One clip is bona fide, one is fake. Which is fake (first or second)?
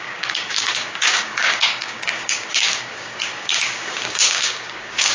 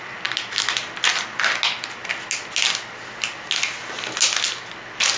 first